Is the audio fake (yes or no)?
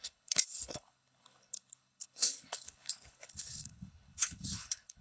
yes